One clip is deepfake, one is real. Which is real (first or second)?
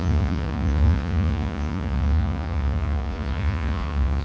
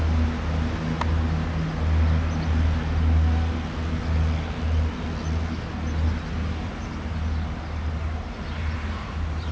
second